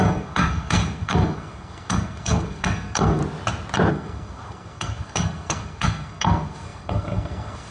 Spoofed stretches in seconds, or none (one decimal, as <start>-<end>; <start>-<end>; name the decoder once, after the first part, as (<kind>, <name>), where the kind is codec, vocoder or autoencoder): 0.0-3.2 (codec, SNAC); 3.9-7.7